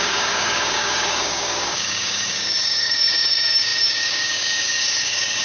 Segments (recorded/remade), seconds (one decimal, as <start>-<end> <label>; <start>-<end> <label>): 0.0-5.4 remade